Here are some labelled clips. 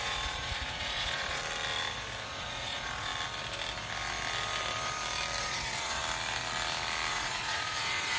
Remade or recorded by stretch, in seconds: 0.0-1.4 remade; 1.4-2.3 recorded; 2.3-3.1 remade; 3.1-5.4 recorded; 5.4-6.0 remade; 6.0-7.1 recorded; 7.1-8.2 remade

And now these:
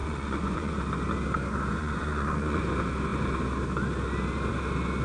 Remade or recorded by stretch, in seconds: 0.0-0.8 remade; 0.8-1.8 recorded; 1.8-2.6 remade; 2.6-5.0 recorded

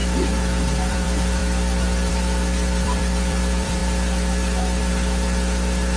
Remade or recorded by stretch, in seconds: 0.0-0.9 recorded; 0.9-3.8 remade; 3.8-6.0 recorded

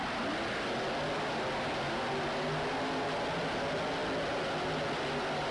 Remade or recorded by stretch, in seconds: 0.0-5.5 recorded

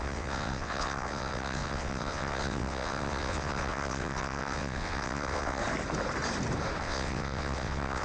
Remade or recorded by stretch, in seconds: 0.0-5.6 remade; 5.6-6.8 recorded; 6.8-8.0 remade